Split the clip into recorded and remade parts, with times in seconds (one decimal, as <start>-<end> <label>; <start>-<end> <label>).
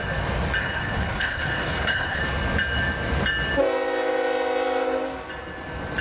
0.0-0.6 recorded; 0.6-2.2 remade; 2.2-6.0 recorded